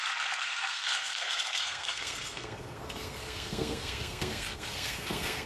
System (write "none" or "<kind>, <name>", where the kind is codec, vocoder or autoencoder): codec, SNAC